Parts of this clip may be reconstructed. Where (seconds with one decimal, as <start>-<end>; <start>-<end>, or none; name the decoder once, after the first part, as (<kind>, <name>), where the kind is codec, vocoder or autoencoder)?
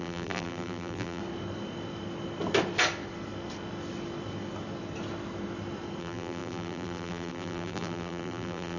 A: 0.0-1.2 (vocoder, BigVGAN v2); 6.0-8.8